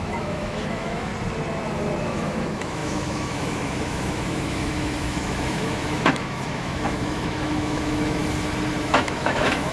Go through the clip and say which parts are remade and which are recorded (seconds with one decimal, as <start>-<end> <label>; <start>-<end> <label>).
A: 0.0-1.1 remade; 1.1-2.0 recorded; 2.0-8.2 remade; 8.2-8.8 recorded; 8.8-9.7 remade